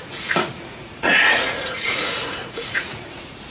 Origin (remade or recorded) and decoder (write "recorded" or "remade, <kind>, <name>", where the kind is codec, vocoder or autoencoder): remade, vocoder, Vocos